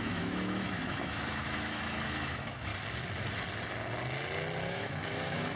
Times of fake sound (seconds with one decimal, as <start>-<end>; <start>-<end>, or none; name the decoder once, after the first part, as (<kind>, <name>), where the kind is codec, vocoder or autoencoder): 0.0-2.7 (autoencoder, DAC-VAE); 4.7-5.6

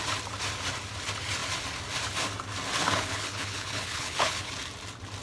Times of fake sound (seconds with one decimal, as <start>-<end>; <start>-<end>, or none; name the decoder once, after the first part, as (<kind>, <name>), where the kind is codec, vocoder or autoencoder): 2.8-4.5 (codec, HILCodec)